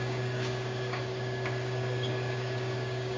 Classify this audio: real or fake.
fake